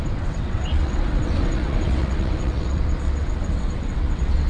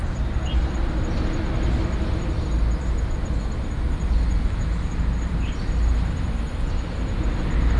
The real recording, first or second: second